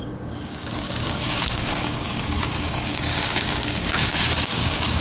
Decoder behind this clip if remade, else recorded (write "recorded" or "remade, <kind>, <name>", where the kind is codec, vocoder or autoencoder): remade, codec, DAC